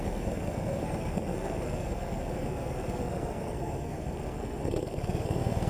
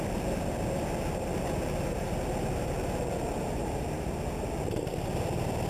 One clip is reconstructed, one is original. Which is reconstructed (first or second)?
first